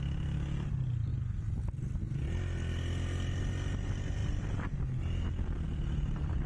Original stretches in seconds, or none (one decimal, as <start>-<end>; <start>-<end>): 0.0-6.5